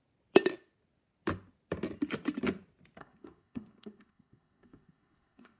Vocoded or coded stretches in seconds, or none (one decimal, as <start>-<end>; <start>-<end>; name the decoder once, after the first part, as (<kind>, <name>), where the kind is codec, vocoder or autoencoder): 3.0-5.6 (codec, SNAC)